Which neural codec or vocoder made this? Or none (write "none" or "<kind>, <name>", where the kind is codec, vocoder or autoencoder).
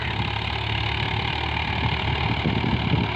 none